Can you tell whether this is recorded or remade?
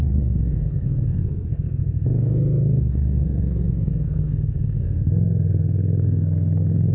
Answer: remade